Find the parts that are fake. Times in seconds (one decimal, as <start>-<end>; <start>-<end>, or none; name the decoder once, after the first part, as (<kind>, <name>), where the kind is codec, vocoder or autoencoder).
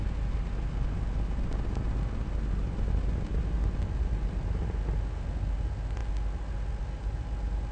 none